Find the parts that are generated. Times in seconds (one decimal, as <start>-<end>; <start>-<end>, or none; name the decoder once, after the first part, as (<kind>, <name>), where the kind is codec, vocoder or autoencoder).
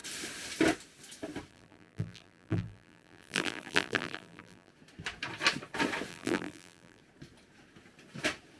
1.5-4.7 (vocoder, BigVGAN v2); 6.1-7.0